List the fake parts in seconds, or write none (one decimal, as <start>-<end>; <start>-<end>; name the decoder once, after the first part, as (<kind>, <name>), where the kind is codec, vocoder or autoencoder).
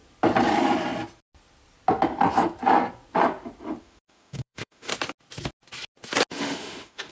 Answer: 3.8-4.9 (autoencoder, DAC-VAE); 6.3-7.1